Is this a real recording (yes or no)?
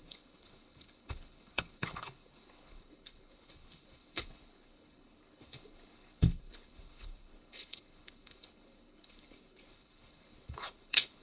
no